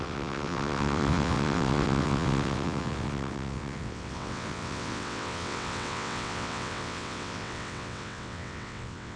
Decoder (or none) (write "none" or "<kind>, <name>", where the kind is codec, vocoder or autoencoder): vocoder, WaveNeXt